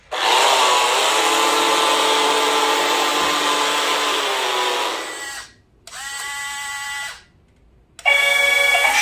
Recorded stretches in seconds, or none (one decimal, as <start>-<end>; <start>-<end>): 0.0-9.0